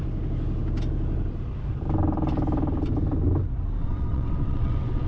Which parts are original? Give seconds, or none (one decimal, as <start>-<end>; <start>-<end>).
0.0-3.8